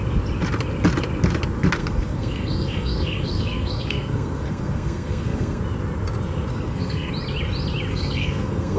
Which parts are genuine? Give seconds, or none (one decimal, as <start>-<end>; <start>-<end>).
0.0-1.8; 5.6-6.5; 7.1-7.9